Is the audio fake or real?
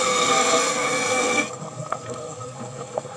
fake